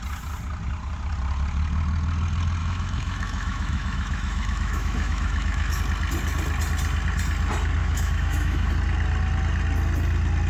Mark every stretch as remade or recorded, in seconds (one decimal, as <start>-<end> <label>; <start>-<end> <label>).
0.0-2.6 recorded; 2.6-5.8 remade; 5.8-7.8 recorded; 7.8-8.7 remade; 8.7-10.5 recorded